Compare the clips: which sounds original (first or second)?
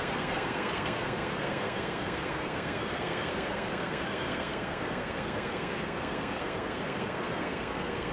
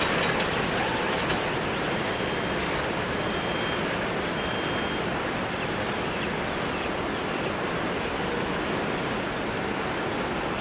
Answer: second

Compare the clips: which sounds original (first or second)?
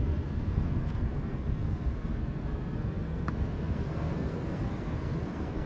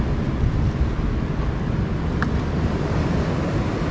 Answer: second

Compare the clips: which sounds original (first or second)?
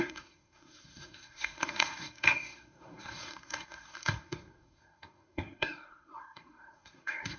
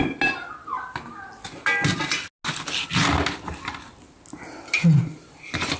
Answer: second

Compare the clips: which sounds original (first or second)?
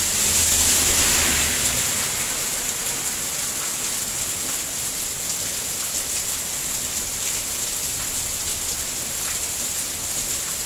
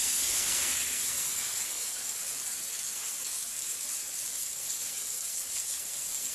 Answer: first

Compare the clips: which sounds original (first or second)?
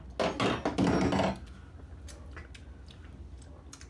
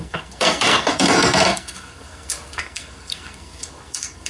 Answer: first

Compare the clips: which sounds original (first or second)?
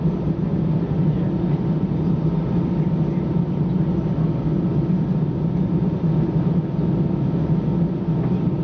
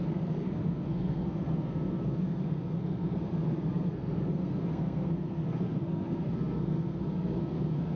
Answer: first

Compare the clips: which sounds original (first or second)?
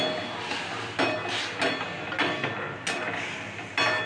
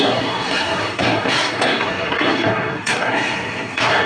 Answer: first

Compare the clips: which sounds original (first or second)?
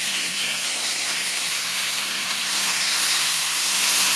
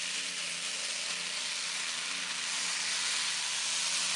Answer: second